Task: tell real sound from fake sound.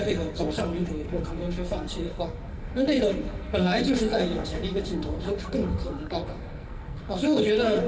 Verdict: fake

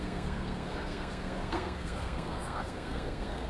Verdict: fake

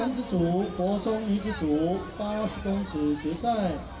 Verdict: real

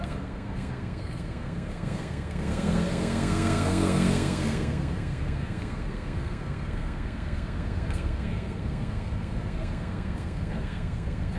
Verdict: fake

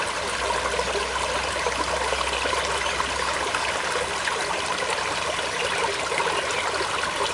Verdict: real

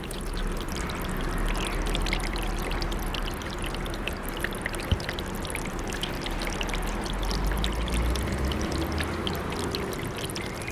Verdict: real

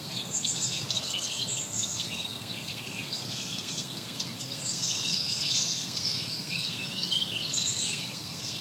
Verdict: fake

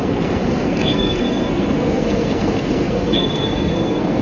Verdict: fake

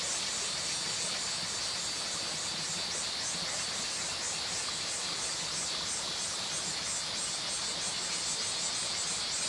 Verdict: real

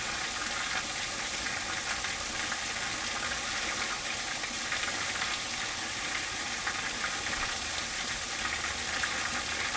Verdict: real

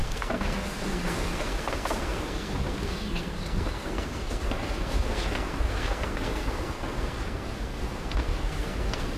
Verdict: fake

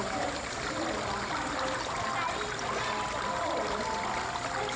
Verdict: real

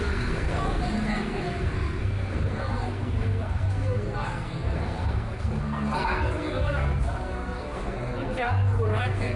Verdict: fake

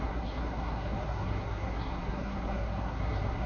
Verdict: fake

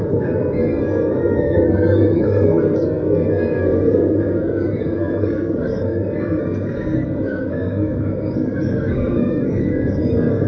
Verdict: fake